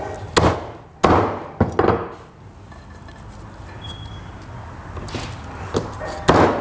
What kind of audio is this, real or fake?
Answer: real